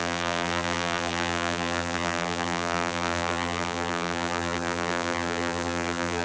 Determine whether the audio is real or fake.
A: fake